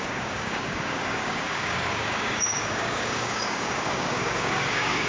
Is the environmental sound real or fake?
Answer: fake